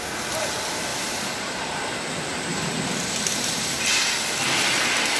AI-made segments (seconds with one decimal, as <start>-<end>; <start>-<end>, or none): 0.9-4.0